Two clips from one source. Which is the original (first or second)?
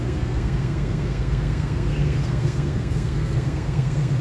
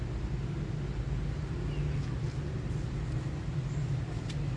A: second